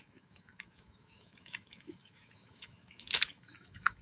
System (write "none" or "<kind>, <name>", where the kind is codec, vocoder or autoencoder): autoencoder, DAC-VAE